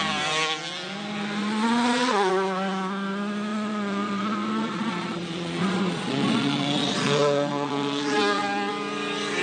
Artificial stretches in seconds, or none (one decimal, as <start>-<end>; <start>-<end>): 1.4-2.3; 3.5-8.7